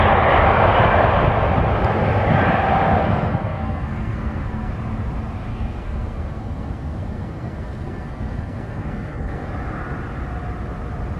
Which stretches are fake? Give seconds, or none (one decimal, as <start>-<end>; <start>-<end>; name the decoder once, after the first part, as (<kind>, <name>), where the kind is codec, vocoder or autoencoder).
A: 3.0-4.7 (codec, SNAC); 5.5-9.5